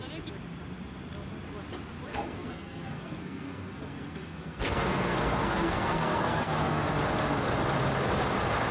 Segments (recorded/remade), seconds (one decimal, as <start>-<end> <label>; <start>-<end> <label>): 0.0-2.1 recorded; 2.1-6.9 remade; 6.9-8.7 recorded